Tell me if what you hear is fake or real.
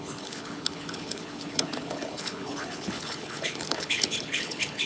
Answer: fake